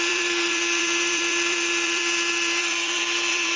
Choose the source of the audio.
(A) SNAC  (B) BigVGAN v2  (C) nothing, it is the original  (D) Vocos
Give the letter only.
B